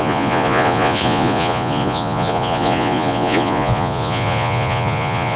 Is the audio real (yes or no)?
no